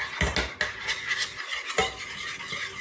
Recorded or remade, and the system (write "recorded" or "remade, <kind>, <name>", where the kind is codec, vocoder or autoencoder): recorded